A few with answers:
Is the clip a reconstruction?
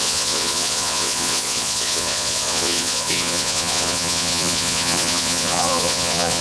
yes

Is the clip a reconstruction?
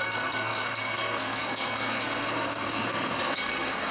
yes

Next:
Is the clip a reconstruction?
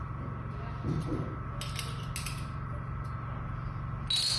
no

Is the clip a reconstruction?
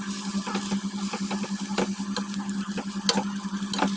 no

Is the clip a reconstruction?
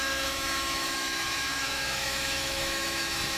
yes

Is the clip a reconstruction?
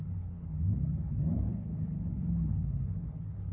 yes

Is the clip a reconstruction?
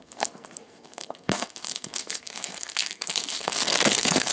yes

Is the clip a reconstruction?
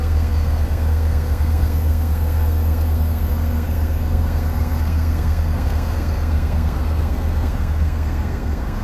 yes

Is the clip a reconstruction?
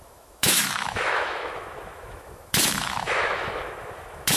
yes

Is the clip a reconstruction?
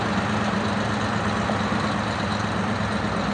no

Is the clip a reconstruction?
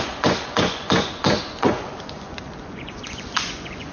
yes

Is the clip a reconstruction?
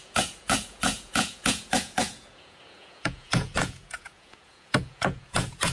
yes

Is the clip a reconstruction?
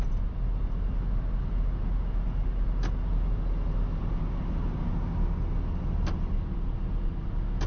no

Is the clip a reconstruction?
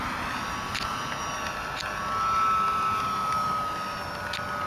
no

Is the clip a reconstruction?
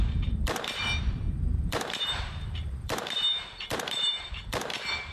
yes